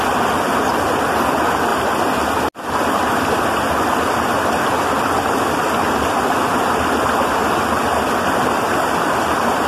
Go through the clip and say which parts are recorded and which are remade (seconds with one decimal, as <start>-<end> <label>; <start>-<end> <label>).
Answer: 0.0-9.7 recorded